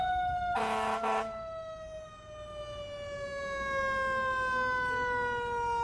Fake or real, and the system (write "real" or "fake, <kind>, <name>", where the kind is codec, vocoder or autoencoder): real